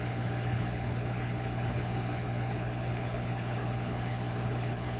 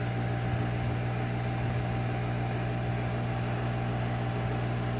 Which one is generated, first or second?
first